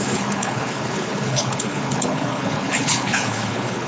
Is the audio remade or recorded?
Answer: remade